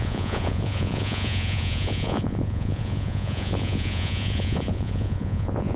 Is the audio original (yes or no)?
no